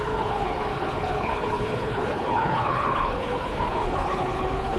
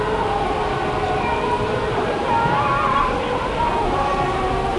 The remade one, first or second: first